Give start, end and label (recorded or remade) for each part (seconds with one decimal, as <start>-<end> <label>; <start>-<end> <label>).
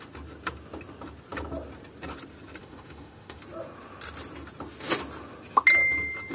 0.0-2.6 recorded; 2.6-3.4 remade; 3.4-6.3 recorded